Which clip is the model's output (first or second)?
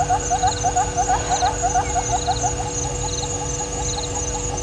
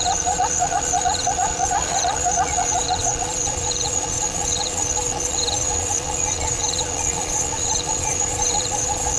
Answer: second